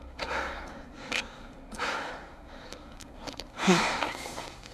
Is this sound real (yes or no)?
no